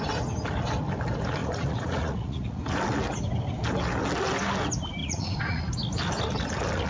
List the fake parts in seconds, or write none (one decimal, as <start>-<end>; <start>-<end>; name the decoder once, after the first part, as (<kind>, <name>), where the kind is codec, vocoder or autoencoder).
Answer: 1.4-2.6 (vocoder, Vocos); 5.0-5.6